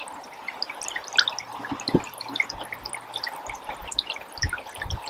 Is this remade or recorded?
recorded